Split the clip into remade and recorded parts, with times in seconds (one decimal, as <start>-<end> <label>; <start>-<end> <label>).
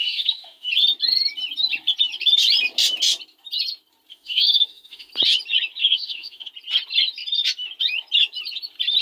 0.0-0.7 remade; 0.7-4.1 recorded; 4.1-5.1 remade; 5.1-5.8 recorded; 5.8-6.5 remade; 6.5-9.0 recorded